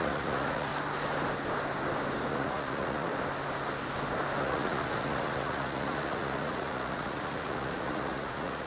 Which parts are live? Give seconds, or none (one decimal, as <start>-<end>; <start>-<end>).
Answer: 0.7-2.3; 3.1-4.4